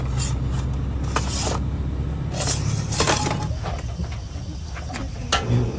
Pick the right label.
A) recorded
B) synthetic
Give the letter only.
A